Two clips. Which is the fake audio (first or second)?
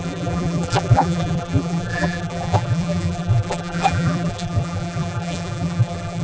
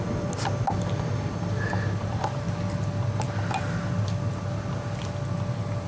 first